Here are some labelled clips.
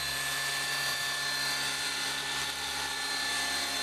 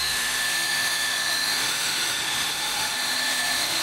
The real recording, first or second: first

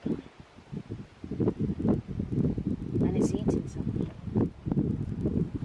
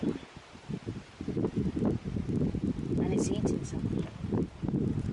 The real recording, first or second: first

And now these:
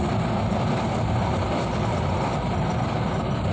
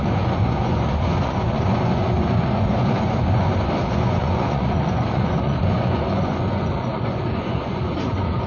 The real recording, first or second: first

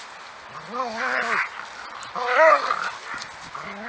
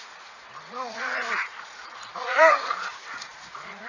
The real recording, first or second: first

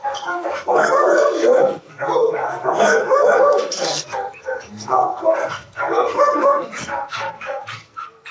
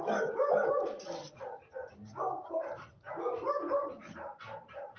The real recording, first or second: second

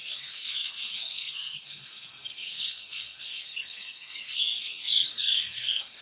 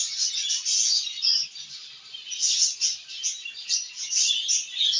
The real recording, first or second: second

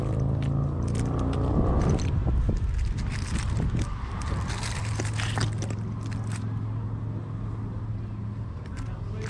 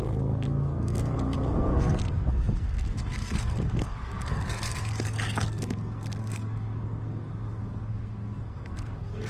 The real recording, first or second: first